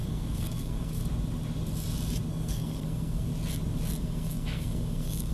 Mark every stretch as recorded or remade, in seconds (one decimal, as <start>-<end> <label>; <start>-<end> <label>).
0.0-1.0 remade; 1.0-2.3 recorded; 2.3-3.3 remade; 3.3-4.0 recorded; 4.0-5.3 remade